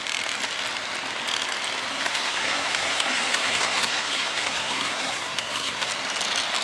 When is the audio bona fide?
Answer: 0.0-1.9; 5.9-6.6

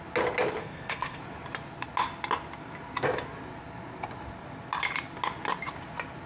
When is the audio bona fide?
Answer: 0.0-0.6; 1.2-6.3

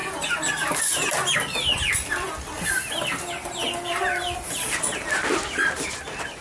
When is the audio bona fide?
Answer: 0.0-6.4